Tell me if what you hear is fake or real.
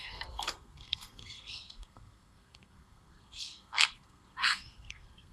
fake